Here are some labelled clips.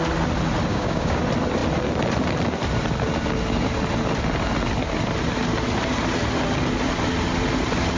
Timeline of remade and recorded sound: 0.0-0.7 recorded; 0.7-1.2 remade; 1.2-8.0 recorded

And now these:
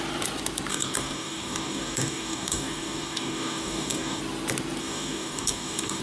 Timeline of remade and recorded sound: 0.0-0.7 recorded; 0.7-4.2 remade; 4.2-4.8 recorded; 4.8-6.0 remade

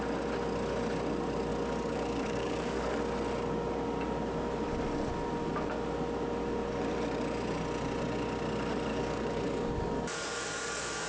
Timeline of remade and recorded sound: 0.0-1.5 recorded; 1.5-3.0 remade; 3.0-8.9 recorded; 8.9-11.1 remade

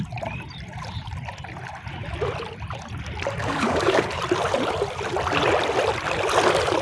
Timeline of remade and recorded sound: 0.0-3.4 recorded; 3.4-4.2 remade; 4.2-6.8 recorded

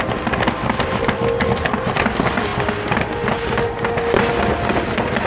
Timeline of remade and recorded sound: 0.0-5.3 recorded

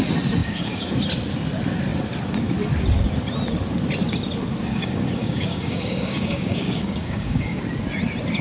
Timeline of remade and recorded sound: 0.0-0.4 recorded; 0.4-0.9 remade; 0.9-4.7 recorded; 4.7-7.6 remade; 7.6-8.4 recorded

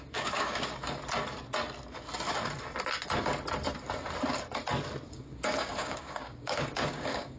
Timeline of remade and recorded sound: 0.0-0.7 remade; 0.7-5.1 recorded; 5.1-7.4 remade

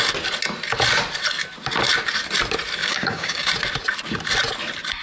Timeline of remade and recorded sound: 0.0-2.8 recorded; 2.8-3.5 remade; 3.5-5.0 recorded